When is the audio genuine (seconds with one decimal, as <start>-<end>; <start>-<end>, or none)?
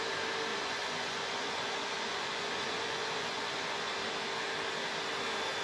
0.0-0.5; 3.9-5.6